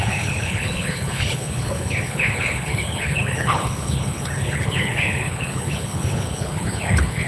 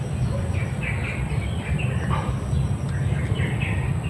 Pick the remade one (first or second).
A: first